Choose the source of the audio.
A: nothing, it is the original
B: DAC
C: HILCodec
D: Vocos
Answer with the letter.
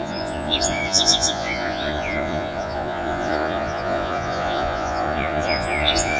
D